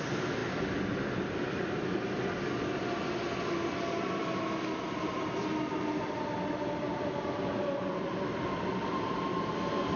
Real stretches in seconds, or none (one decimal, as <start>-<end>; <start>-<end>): 0.0-10.0